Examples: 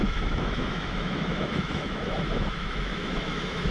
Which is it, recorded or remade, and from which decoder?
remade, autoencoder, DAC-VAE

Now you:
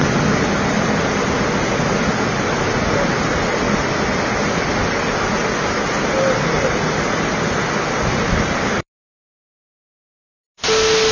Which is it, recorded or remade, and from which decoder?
recorded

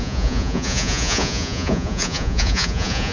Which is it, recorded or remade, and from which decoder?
remade, vocoder, Vocos